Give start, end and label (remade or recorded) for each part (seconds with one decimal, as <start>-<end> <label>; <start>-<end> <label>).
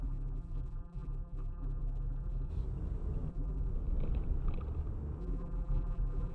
0.0-2.5 remade; 2.5-3.3 recorded; 3.3-3.7 remade; 3.7-5.2 recorded; 5.2-6.3 remade